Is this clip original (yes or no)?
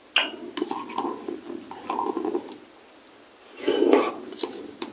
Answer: yes